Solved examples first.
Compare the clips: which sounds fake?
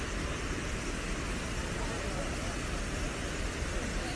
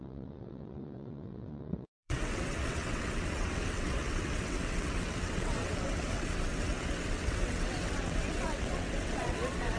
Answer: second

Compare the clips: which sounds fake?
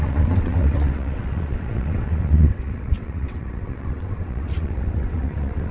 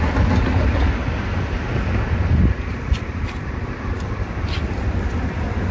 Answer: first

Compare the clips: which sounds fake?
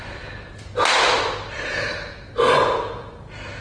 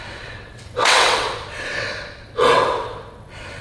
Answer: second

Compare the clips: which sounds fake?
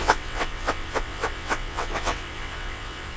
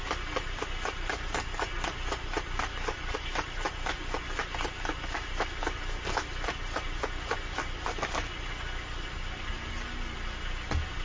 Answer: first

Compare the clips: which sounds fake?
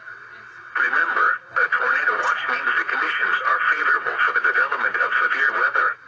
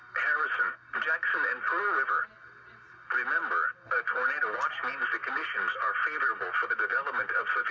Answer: first